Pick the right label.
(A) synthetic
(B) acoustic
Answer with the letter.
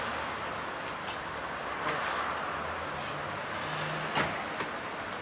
B